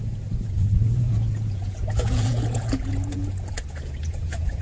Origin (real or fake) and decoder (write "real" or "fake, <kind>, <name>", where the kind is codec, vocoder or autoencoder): fake, vocoder, Vocos